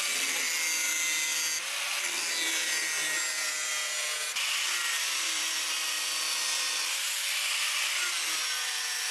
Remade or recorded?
recorded